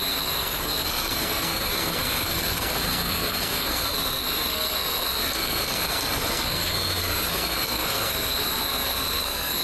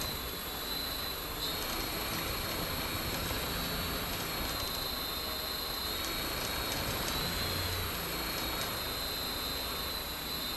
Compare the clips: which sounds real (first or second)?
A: second